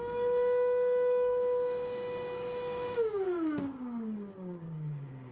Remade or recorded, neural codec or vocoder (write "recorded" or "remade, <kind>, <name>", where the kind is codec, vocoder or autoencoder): remade, codec, DAC